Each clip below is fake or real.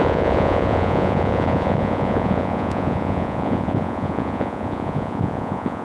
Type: fake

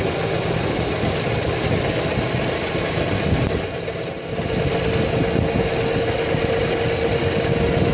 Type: real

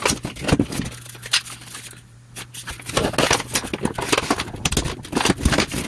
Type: real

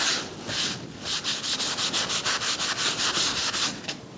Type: real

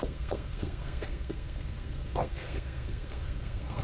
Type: fake